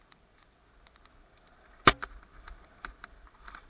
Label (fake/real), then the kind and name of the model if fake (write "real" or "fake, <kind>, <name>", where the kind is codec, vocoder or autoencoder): real